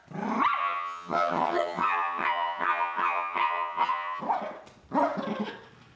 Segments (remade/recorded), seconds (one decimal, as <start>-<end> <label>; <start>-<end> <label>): 0.0-0.6 recorded; 0.6-4.2 remade; 4.2-6.0 recorded